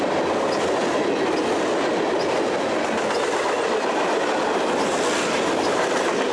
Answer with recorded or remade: recorded